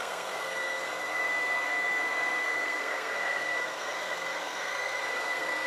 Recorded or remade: remade